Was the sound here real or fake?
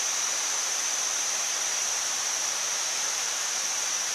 fake